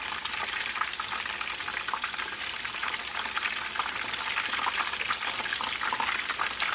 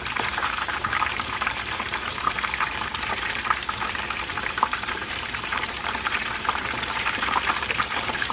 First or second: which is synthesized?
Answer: second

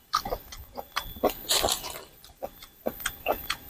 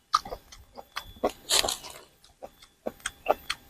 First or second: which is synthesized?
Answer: first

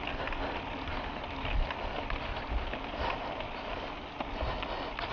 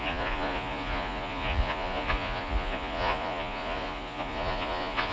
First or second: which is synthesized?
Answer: second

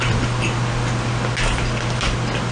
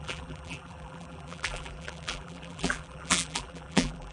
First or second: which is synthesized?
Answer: second